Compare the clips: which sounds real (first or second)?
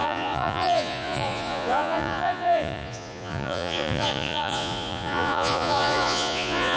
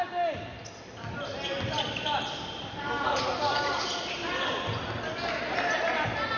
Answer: second